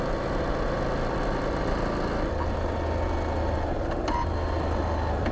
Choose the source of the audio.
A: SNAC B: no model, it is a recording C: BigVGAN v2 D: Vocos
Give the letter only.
B